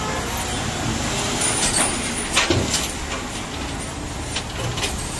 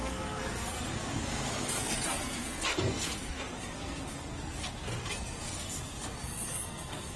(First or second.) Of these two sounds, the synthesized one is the second